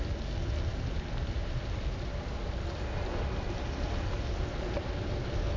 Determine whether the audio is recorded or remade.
recorded